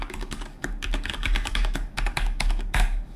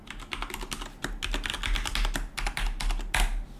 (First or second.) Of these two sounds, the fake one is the first